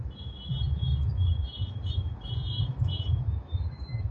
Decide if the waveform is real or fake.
fake